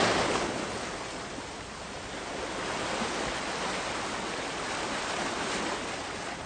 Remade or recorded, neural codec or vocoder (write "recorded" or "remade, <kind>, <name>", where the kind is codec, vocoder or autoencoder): recorded